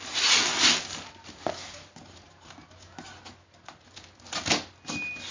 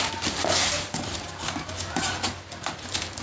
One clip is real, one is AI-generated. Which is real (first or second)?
first